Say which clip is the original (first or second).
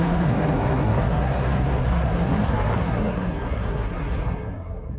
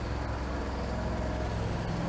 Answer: second